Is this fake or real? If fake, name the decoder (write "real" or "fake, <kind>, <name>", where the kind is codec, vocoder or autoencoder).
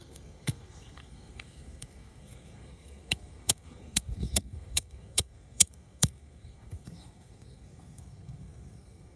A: fake, codec, SNAC